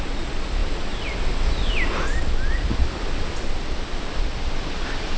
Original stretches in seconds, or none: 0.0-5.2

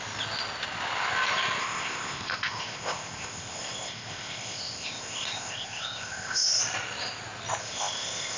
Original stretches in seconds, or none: 0.0-1.6; 6.6-7.6

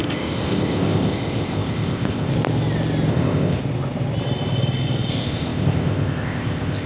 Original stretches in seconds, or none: 2.3-3.1; 3.6-5.1